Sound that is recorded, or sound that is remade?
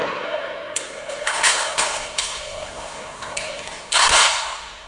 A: remade